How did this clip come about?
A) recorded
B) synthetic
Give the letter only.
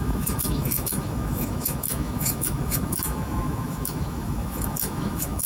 B